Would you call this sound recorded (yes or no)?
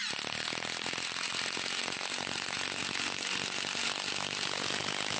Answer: yes